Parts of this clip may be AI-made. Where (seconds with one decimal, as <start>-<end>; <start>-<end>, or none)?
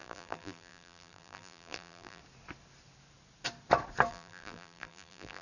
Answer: 0.0-2.2; 4.1-5.4